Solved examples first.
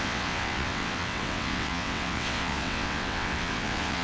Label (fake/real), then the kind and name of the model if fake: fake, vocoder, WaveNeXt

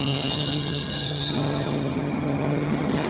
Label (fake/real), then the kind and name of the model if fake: fake, vocoder, HiFi-GAN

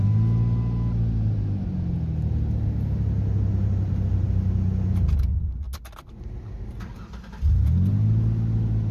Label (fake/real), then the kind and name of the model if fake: real